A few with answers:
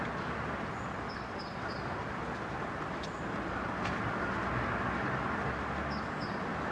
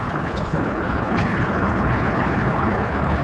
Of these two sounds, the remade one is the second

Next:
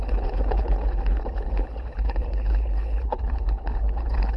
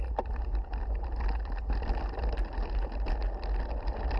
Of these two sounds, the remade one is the first